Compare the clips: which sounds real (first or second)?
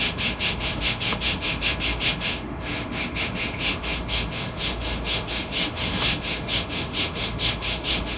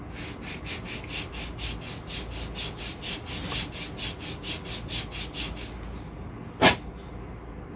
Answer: second